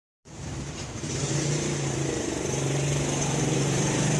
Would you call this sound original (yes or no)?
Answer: no